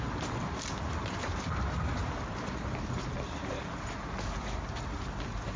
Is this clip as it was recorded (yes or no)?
yes